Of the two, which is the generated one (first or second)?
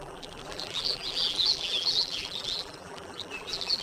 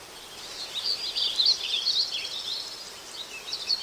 first